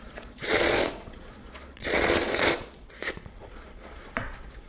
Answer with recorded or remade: remade